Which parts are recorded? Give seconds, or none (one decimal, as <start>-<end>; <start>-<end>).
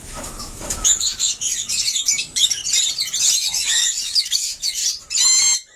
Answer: 2.6-3.2; 4.8-5.8